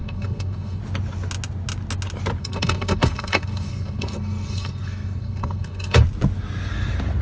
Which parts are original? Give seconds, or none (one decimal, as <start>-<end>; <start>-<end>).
0.8-2.4; 6.0-7.2